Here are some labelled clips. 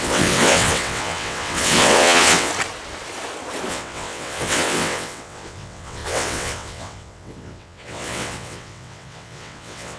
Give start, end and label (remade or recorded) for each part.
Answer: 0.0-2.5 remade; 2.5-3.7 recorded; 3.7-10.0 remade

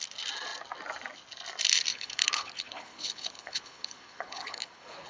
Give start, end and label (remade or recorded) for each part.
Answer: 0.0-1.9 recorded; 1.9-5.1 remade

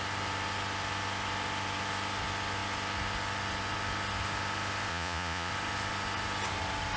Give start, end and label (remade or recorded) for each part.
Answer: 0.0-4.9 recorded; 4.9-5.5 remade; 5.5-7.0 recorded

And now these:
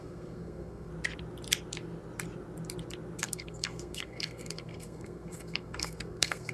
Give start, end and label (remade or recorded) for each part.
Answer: 0.0-0.9 remade; 0.9-3.2 recorded; 3.2-6.5 remade

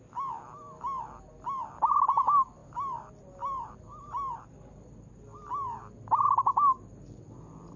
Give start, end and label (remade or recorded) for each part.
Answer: 0.0-2.6 recorded; 2.6-3.8 remade; 3.8-7.8 recorded